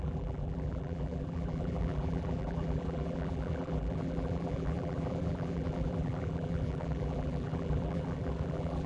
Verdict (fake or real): fake